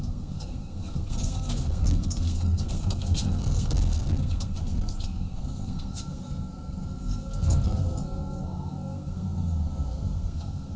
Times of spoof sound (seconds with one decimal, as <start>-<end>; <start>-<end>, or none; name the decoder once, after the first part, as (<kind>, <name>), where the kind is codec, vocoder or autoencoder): 0.0-10.8 (codec, SNAC)